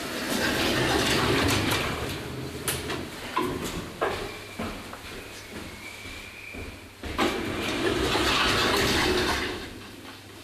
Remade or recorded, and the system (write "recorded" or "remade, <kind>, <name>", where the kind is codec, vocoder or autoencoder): recorded